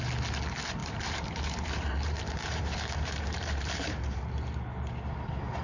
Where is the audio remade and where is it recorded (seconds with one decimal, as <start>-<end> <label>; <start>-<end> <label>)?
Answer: 0.0-0.8 recorded; 0.8-4.2 remade; 4.2-5.6 recorded